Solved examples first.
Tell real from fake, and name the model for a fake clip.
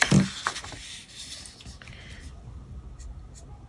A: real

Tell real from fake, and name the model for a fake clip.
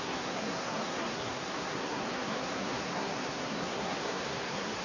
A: fake, codec, SNAC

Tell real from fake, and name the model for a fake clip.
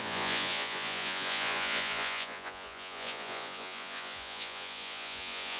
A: fake, vocoder, Vocos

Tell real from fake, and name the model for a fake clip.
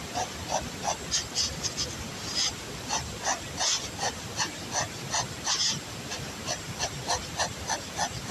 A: real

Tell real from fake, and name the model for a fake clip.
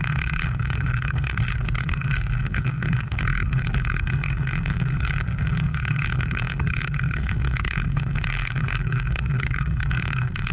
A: fake, codec, SNAC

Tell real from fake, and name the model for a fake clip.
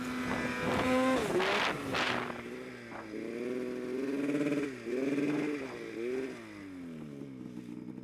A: real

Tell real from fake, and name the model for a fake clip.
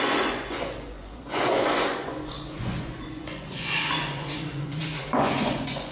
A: fake, vocoder, Vocos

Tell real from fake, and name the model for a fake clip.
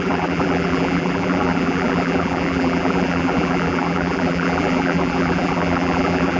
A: fake, vocoder, BigVGAN v2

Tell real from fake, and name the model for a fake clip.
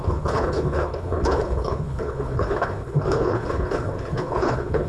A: fake, codec, HILCodec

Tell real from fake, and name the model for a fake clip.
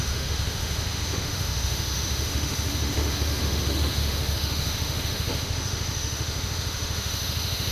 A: fake, autoencoder, DAC-VAE